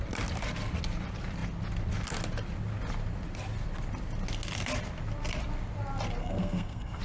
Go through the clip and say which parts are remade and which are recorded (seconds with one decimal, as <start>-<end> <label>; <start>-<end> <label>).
0.0-6.2 recorded; 6.2-7.0 remade

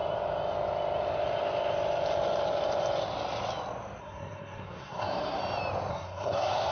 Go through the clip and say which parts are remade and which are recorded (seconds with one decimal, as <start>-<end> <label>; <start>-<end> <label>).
0.0-4.0 recorded; 4.0-5.4 remade; 5.4-5.9 recorded; 5.9-6.7 remade

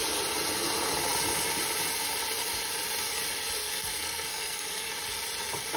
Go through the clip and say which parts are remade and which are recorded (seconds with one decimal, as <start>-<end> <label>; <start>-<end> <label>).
0.0-3.6 recorded; 3.6-4.9 remade; 4.9-5.8 recorded

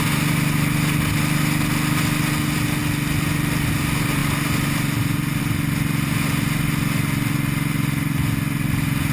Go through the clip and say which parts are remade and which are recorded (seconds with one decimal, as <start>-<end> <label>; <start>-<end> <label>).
0.0-9.1 recorded

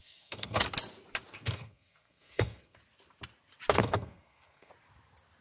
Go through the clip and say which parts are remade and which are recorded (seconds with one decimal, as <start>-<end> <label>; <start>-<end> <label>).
0.0-0.6 remade; 0.6-1.3 recorded; 1.3-2.8 remade; 2.8-3.8 recorded; 3.8-4.7 remade; 4.7-5.4 recorded